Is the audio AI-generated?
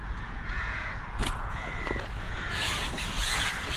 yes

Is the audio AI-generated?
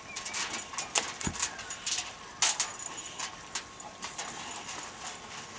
no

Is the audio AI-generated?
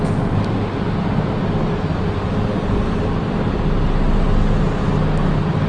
no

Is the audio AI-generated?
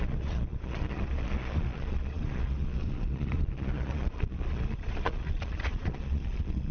yes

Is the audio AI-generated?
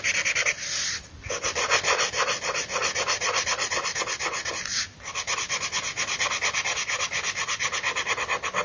no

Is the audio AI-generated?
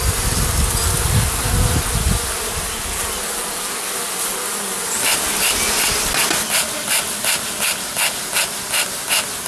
no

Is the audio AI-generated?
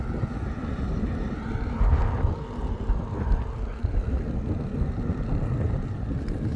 no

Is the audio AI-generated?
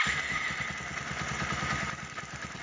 no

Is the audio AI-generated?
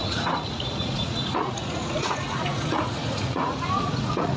yes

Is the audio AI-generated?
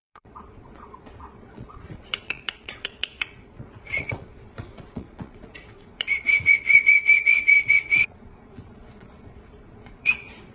yes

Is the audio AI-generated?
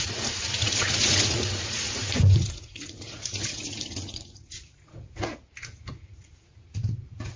yes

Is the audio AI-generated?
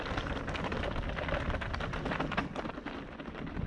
no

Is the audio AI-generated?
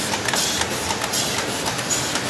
no